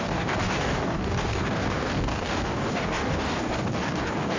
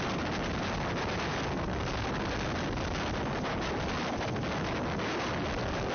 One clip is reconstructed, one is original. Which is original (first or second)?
second